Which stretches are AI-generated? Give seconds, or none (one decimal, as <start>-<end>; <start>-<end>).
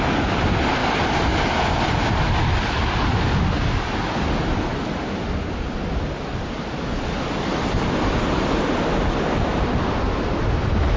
none